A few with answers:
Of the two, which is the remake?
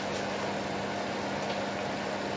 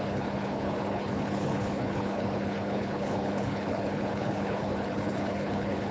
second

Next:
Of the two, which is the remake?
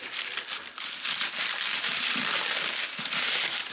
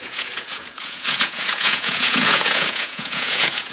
second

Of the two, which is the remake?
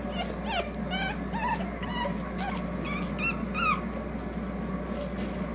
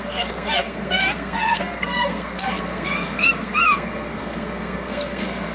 second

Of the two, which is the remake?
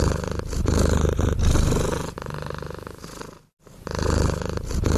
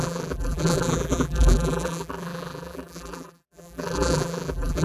second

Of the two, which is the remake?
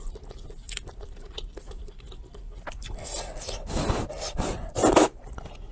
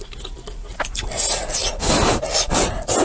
first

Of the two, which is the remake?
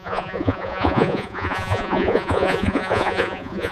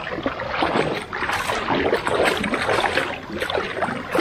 first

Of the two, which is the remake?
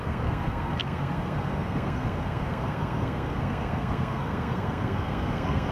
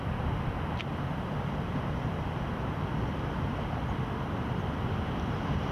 first